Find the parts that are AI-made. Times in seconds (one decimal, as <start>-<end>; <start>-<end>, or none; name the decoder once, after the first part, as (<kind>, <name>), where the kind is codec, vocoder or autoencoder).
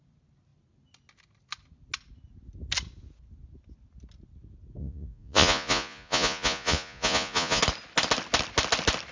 4.8-7.6 (vocoder, Vocos)